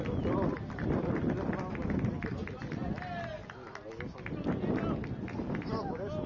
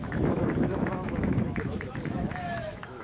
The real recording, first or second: first